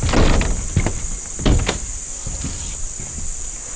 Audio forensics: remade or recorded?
recorded